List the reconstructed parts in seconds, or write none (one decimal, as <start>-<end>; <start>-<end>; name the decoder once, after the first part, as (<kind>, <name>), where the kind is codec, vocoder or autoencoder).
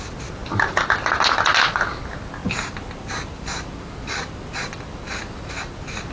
2.4-6.1 (vocoder, BigVGAN v2)